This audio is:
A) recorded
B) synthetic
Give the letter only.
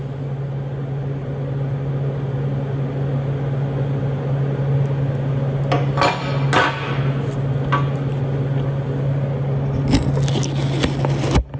A